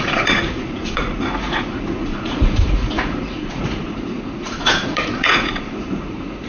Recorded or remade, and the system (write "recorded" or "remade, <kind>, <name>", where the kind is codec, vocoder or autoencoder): remade, vocoder, Vocos